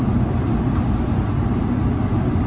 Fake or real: fake